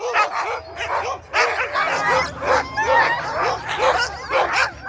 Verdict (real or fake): real